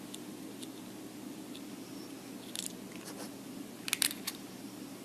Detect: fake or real real